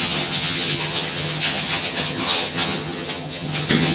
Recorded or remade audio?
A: remade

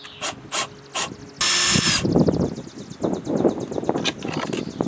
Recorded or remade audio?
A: recorded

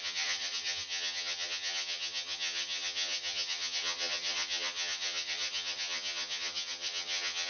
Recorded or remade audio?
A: remade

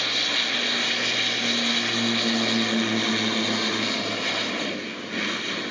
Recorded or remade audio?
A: recorded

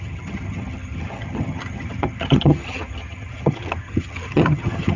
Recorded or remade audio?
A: remade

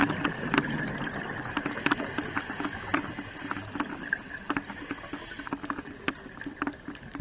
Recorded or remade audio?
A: recorded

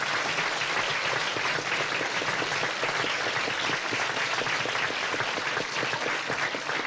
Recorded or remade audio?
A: recorded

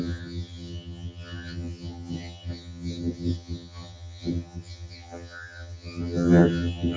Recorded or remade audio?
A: remade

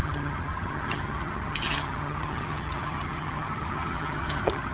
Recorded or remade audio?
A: remade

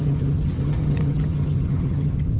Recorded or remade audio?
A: remade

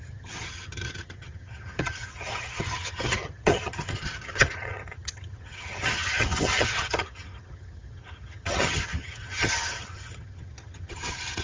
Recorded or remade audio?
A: remade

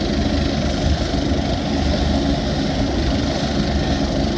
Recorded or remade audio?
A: recorded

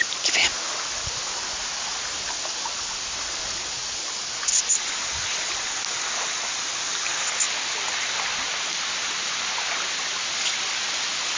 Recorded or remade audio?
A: recorded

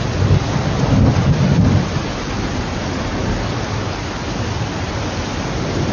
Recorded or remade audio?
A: recorded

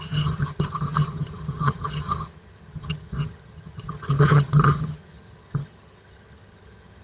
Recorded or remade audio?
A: remade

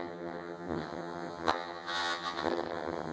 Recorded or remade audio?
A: remade